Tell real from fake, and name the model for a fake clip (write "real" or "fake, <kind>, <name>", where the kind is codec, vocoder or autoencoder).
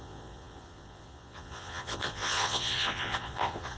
fake, vocoder, Vocos